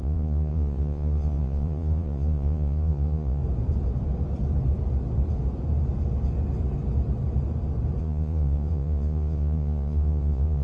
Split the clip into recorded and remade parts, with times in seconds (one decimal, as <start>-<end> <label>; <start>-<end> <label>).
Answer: 0.0-3.4 remade; 3.4-8.0 recorded; 8.0-10.6 remade